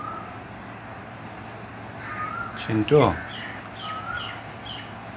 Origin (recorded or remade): recorded